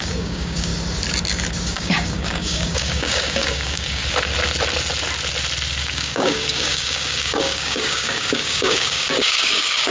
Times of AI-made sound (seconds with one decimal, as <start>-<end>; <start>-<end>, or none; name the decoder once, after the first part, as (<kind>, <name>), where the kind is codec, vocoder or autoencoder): 0.0-0.7 (codec, DAC); 1.7-4.0; 5.8-9.9

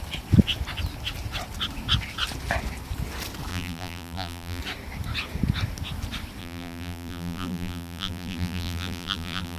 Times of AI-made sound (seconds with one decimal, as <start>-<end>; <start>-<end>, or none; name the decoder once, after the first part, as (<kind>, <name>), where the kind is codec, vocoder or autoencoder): 3.5-4.6 (vocoder, BigVGAN v2); 6.4-9.6